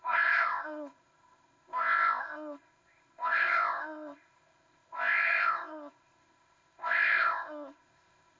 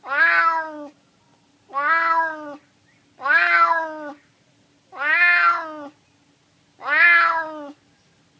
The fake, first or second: first